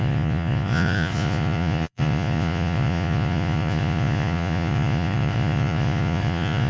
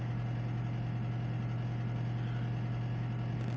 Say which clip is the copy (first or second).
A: first